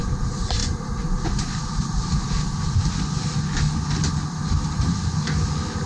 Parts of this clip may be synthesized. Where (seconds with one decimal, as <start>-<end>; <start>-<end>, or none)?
none

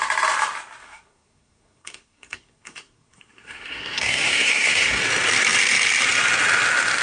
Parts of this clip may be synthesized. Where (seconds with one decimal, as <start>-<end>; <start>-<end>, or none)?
0.8-5.0

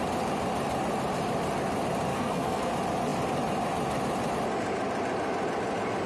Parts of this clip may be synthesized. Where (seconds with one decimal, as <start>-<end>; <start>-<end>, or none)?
2.1-2.7

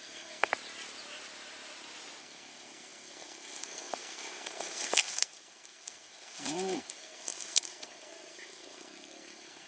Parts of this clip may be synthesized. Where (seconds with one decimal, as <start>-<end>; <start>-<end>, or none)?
0.0-0.5; 2.2-9.7

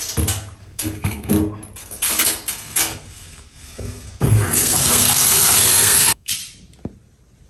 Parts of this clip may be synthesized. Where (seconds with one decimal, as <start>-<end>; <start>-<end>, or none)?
0.6-1.3; 1.8-6.3

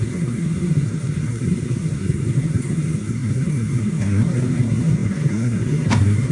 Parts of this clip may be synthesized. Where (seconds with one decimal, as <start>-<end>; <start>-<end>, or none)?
0.0-6.3